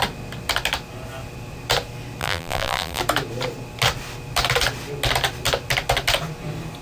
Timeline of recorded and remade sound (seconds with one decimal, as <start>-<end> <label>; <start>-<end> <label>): 0.0-2.2 recorded; 2.2-3.0 remade; 3.0-6.8 recorded